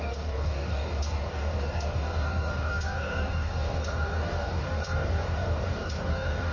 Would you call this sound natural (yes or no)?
no